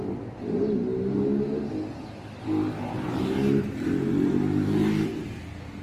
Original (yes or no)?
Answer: yes